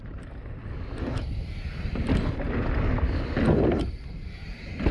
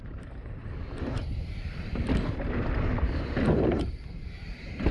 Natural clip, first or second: first